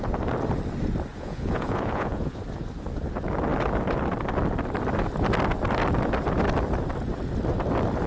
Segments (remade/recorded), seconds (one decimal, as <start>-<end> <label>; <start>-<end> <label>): 0.0-1.1 recorded; 1.1-2.4 remade; 2.4-8.1 recorded